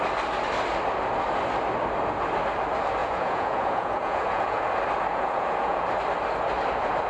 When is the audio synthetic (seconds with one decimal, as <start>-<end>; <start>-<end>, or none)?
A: 3.0-4.6; 5.1-5.9